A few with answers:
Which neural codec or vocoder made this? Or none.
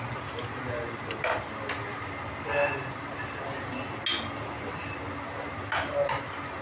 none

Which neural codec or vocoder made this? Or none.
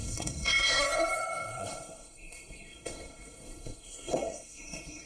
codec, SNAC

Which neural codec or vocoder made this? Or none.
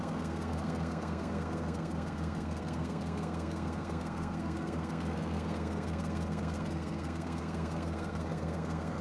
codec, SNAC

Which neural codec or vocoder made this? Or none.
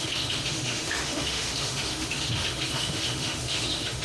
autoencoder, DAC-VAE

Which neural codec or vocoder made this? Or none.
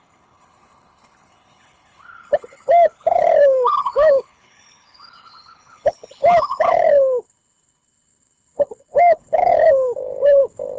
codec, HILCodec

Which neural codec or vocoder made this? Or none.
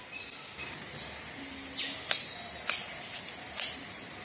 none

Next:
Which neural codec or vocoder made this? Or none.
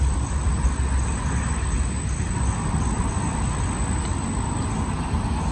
none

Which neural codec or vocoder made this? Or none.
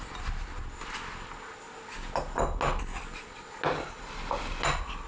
none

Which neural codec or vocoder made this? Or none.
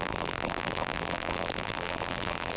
vocoder, BigVGAN v2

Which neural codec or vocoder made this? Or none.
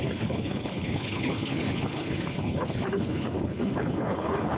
codec, HILCodec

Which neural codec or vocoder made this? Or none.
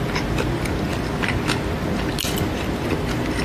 none